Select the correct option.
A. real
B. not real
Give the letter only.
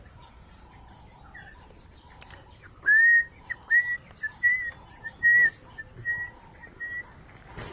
A